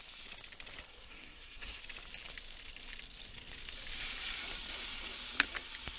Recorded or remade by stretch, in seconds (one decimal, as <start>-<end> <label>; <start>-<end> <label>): 0.0-0.9 recorded; 0.9-1.8 remade; 1.8-6.0 recorded